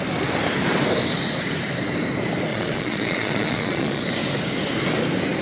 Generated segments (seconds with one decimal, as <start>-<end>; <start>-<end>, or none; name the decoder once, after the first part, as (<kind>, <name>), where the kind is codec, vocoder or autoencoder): 2.5-4.0 (vocoder, Vocos)